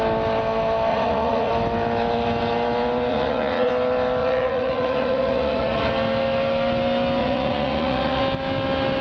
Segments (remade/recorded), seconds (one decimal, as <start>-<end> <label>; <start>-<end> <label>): 0.0-0.9 recorded; 0.9-1.5 remade; 1.5-3.1 recorded; 3.1-3.7 remade; 3.7-4.2 recorded; 4.2-5.9 remade; 5.9-7.2 recorded; 7.2-8.2 remade; 8.2-9.0 recorded

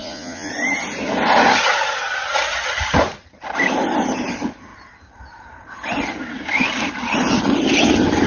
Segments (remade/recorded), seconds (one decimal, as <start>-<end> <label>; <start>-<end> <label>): 0.0-0.5 remade; 0.5-8.3 recorded

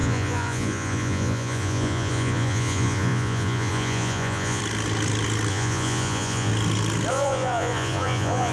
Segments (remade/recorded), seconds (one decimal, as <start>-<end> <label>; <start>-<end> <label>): 0.0-4.6 remade; 4.6-5.5 recorded; 5.5-6.5 remade; 6.5-7.1 recorded; 7.1-8.5 remade

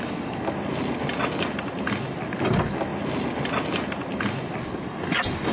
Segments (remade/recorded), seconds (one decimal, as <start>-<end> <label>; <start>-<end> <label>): 0.0-5.5 recorded

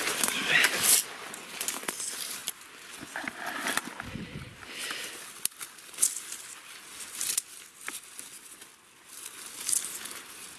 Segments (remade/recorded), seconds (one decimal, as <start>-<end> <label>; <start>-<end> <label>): 0.0-10.6 recorded